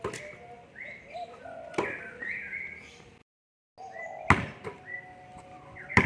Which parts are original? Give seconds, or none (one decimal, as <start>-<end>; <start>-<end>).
0.0-5.3